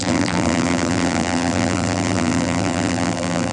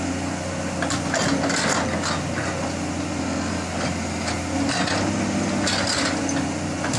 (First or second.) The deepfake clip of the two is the first